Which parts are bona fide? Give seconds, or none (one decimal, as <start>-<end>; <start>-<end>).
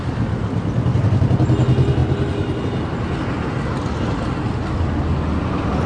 0.0-5.9